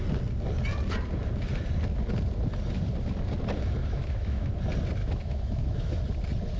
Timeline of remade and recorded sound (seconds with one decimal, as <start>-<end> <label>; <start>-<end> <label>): 0.0-3.8 recorded; 3.8-4.5 remade; 4.5-5.0 recorded; 5.0-6.0 remade; 6.0-6.6 recorded